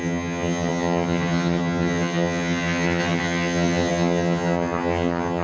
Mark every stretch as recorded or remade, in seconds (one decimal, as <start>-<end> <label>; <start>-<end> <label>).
0.0-5.4 remade